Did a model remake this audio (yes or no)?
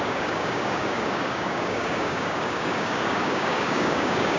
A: yes